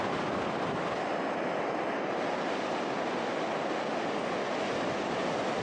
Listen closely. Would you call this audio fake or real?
real